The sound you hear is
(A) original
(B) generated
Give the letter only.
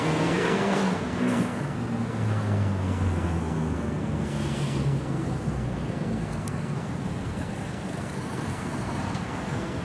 B